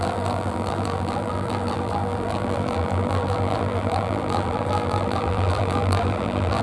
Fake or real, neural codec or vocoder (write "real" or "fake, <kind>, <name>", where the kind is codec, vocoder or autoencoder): fake, vocoder, BigVGAN v2